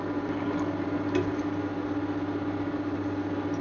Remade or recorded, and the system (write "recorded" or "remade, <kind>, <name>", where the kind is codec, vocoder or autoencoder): recorded